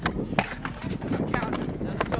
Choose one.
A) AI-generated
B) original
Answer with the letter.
B